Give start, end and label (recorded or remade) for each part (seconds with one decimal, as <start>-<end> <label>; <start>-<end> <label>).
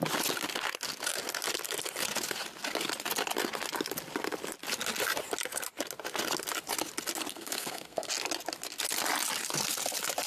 0.0-7.3 recorded; 7.3-8.1 remade; 8.1-10.3 recorded